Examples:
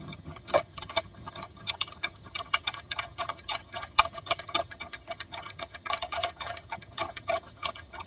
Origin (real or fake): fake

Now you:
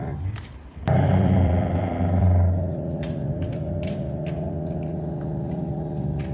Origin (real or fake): fake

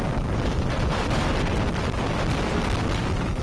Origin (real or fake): real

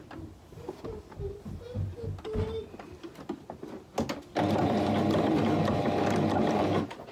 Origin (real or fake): real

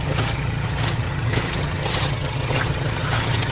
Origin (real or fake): fake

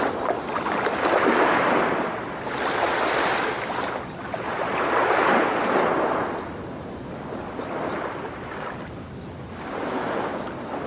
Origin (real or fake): real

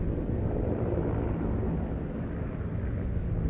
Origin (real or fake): real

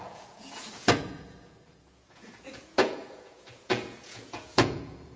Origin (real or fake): fake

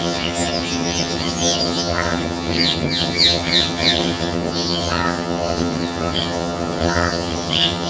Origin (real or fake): fake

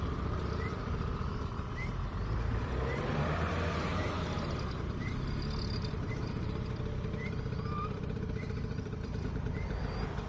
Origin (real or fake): fake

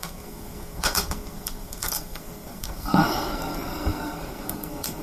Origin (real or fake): fake